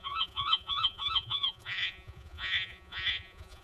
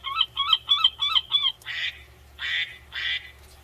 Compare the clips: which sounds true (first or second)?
second